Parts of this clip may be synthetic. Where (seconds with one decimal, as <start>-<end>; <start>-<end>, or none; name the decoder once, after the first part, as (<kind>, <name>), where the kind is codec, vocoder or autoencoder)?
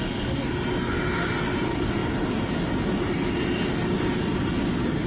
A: none